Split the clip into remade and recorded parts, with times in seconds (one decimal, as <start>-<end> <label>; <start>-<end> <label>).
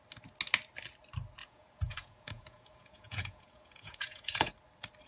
0.0-1.4 recorded; 1.4-4.5 remade; 4.5-5.1 recorded